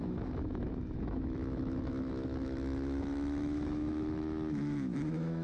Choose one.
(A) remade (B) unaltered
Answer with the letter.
A